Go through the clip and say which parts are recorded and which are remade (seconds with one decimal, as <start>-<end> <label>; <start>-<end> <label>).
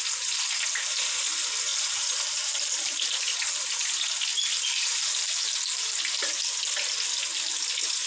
0.0-1.7 recorded; 1.7-3.2 remade; 3.2-4.3 recorded; 4.3-5.9 remade; 5.9-8.1 recorded